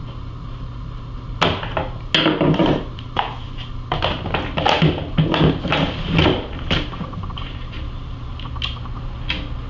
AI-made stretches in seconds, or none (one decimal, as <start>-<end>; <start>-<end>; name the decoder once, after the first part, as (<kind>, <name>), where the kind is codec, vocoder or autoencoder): 2.6-4.0 (vocoder, BigVGAN v2); 6.2-8.3